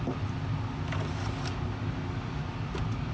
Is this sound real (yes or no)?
yes